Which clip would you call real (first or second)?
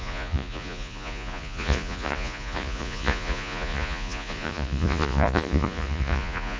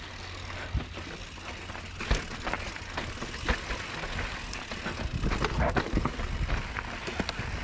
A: second